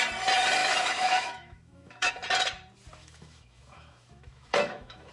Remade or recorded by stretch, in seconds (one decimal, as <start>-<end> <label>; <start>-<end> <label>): 0.0-0.6 recorded; 0.6-2.1 remade; 2.1-3.0 recorded; 3.0-5.1 remade